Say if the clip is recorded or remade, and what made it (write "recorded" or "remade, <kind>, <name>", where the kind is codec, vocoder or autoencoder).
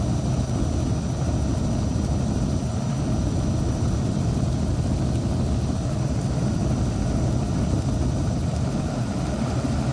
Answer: recorded